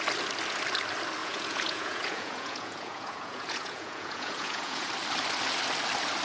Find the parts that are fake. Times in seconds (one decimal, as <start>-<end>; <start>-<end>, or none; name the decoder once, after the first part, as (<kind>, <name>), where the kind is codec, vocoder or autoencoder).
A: 1.2-4.9 (vocoder, Vocos)